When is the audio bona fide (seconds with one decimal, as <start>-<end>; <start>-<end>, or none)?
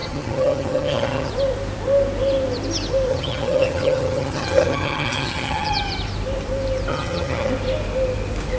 1.3-3.1; 5.7-6.9; 7.5-8.6